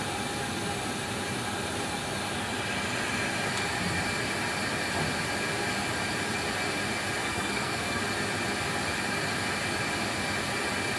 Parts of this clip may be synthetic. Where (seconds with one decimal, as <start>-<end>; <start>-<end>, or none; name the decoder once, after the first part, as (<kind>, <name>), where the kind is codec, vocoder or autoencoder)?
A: 7.2-8.0 (codec, SNAC)